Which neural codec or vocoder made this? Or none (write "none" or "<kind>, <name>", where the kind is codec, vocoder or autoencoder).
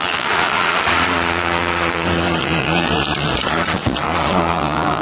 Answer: vocoder, Vocos